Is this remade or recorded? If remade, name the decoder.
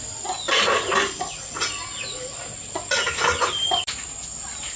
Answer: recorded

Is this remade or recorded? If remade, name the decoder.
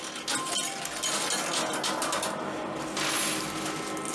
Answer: recorded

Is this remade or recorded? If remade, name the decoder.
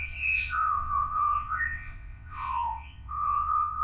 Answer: remade, vocoder, WaveNeXt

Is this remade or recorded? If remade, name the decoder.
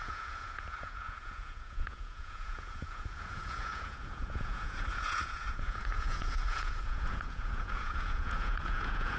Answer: remade, vocoder, Vocos